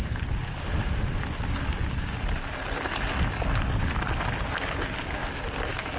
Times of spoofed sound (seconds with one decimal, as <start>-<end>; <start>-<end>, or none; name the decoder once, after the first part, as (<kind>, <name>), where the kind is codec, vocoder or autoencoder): none